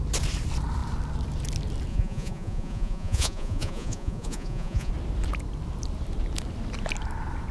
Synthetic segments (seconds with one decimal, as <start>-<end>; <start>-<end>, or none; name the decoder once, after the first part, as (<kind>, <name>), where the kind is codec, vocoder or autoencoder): 1.9-4.9 (vocoder, Vocos)